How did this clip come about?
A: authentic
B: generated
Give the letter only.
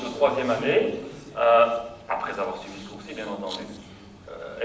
A